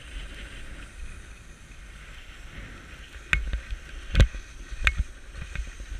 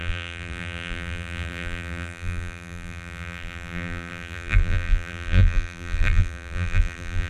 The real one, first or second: first